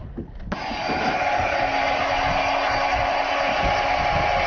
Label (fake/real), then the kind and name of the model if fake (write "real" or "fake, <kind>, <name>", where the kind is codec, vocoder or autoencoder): real